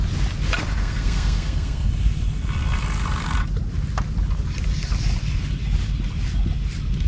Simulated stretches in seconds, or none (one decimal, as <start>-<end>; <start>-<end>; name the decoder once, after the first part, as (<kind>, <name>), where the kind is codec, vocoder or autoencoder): 0.8-1.9 (codec, SNAC)